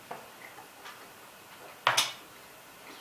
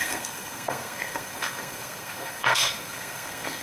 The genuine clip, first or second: first